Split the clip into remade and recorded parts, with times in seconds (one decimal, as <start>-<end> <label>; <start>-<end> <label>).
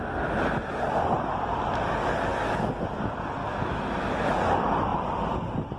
0.0-3.4 recorded; 3.4-4.1 remade; 4.1-5.8 recorded